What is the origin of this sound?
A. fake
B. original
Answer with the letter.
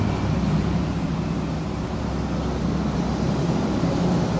B